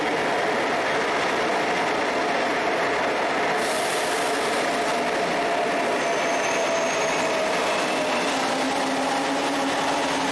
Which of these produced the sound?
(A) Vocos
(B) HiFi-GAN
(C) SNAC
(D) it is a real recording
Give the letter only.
D